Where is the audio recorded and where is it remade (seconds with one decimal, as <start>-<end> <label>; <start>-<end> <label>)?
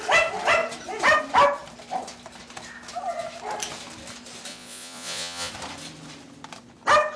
0.0-4.5 recorded; 4.5-5.5 remade; 5.5-7.2 recorded